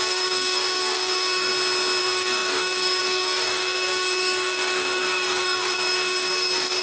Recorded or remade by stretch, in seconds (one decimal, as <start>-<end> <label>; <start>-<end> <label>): 0.0-1.5 remade; 1.5-2.0 recorded; 2.0-6.8 remade